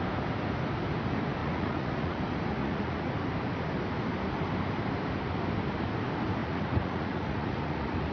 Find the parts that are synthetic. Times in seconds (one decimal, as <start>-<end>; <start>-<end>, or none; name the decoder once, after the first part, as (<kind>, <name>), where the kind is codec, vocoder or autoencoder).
1.4-2.2 (vocoder, Vocos); 2.6-3.1; 6.4-8.1